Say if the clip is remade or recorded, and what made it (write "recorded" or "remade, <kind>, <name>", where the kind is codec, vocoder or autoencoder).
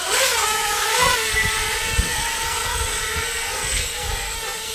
remade, codec, SNAC